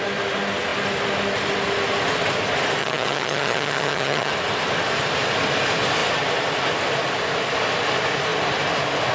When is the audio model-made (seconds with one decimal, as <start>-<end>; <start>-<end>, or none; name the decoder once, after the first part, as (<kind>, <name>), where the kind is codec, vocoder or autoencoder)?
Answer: 2.8-4.3 (vocoder, HiFi-GAN)